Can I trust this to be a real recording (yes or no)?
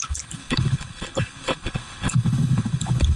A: no